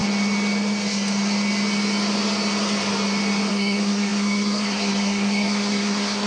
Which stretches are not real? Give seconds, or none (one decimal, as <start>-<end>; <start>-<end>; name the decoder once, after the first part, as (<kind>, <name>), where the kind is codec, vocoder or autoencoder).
3.5-6.3 (codec, SNAC)

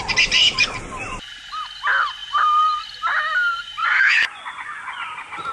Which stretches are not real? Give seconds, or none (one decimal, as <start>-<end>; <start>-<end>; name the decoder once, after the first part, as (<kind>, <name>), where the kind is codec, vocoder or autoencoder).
3.8-5.1 (vocoder, Vocos)

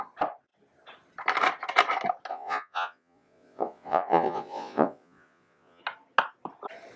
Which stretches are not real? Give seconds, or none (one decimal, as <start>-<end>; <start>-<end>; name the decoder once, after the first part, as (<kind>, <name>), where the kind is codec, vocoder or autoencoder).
2.3-5.8 (vocoder, Vocos)

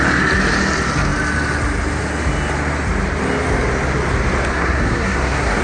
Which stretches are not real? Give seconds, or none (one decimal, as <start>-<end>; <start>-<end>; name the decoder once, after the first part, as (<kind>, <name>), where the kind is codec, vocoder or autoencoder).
4.5-5.6 (codec, SNAC)

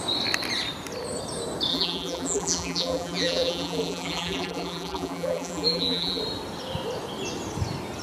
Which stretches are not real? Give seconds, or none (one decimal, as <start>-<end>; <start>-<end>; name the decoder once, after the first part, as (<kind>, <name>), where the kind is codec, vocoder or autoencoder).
1.7-6.2 (vocoder, BigVGAN v2)

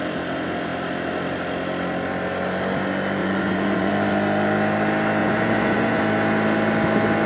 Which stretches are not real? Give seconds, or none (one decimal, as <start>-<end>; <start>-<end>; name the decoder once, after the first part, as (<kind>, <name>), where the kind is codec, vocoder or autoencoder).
3.2-3.9 (vocoder, Vocos); 5.2-6.0

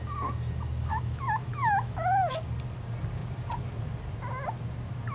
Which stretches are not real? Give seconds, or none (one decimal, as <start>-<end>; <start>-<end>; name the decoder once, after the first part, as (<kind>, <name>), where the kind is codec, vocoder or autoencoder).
0.9-2.3 (autoencoder, DAC-VAE)